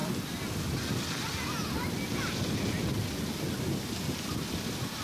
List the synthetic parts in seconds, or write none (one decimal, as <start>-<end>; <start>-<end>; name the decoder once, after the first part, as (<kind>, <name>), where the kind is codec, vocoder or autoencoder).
none